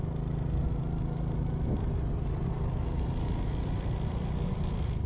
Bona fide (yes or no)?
yes